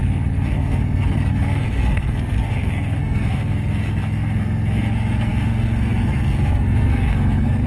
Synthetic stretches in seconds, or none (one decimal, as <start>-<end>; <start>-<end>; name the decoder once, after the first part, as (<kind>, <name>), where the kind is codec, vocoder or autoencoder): 0.0-7.7 (codec, SNAC)